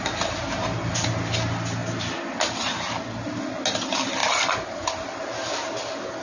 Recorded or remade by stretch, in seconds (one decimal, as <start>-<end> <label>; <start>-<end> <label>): 0.0-4.2 recorded; 4.2-5.2 remade; 5.2-6.2 recorded